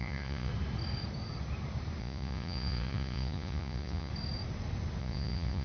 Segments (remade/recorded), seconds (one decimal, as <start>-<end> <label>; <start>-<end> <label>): 0.0-0.5 remade; 0.5-2.0 recorded; 2.0-4.1 remade; 4.1-5.0 recorded; 5.0-5.6 remade